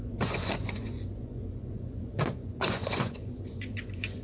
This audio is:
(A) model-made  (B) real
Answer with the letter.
A